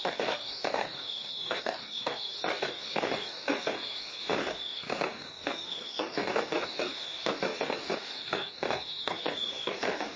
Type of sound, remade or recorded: remade